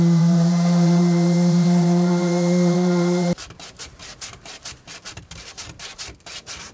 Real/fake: fake